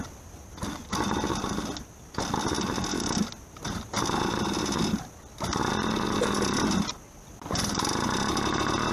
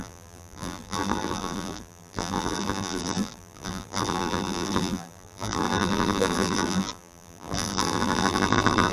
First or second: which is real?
first